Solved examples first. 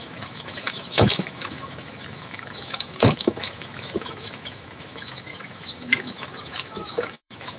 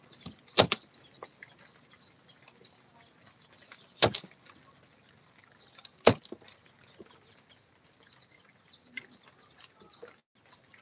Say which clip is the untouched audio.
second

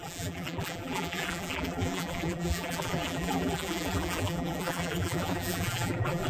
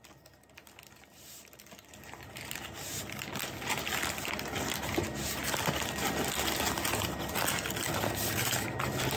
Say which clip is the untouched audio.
second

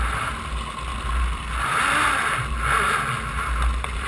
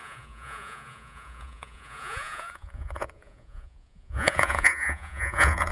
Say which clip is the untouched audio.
first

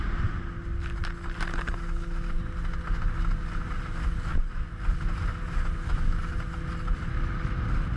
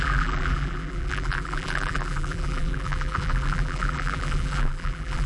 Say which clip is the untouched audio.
first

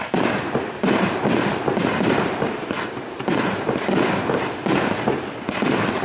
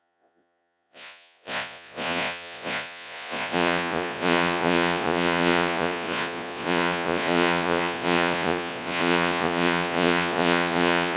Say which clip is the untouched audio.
first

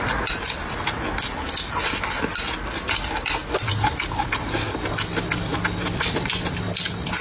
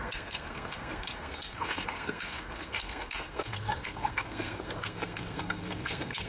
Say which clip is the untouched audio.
first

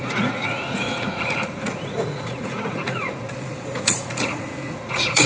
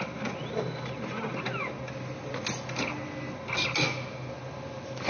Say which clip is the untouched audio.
second